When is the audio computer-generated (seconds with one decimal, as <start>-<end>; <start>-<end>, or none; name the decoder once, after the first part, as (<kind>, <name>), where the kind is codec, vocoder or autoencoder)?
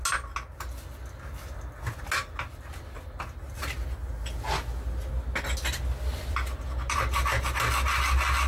6.1-7.0 (vocoder, BigVGAN v2)